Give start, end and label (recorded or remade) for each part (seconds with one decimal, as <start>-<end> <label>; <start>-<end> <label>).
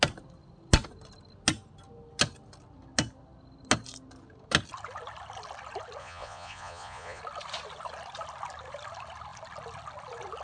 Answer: 0.0-6.0 recorded; 6.0-7.2 remade; 7.2-10.4 recorded